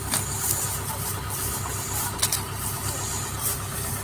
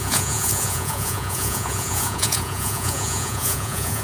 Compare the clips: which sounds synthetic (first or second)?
second